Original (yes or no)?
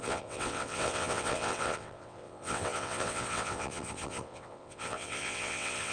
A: no